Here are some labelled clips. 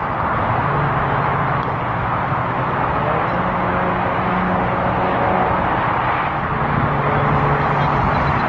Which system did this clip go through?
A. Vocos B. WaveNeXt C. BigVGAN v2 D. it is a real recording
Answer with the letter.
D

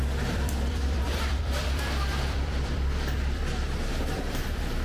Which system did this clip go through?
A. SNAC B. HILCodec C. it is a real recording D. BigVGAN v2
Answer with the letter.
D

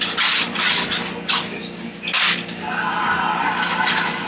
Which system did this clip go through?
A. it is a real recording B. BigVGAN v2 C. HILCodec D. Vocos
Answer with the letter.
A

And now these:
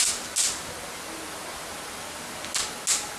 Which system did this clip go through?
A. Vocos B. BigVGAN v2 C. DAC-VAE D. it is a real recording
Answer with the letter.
D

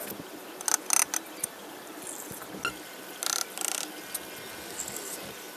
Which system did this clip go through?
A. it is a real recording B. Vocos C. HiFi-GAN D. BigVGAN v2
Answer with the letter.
A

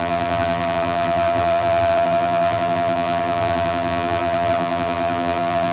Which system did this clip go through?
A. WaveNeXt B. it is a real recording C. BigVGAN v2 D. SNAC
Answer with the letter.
C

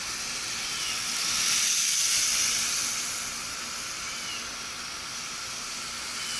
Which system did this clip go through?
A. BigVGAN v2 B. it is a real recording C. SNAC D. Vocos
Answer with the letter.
B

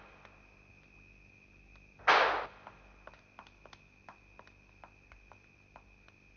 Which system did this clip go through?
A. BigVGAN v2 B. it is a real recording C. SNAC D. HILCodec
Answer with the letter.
B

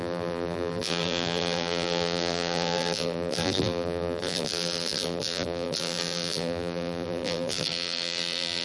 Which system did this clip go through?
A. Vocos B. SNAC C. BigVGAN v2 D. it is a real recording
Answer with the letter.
C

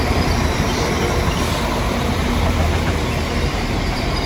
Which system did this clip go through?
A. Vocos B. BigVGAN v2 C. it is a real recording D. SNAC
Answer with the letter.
B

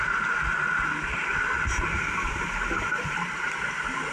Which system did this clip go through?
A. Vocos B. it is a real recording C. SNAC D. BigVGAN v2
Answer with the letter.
B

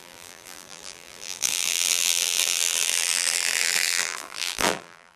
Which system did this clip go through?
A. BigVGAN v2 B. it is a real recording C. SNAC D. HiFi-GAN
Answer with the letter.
A